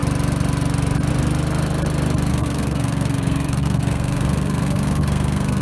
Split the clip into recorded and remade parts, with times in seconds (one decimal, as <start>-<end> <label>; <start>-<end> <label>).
0.0-2.3 recorded; 2.3-5.6 remade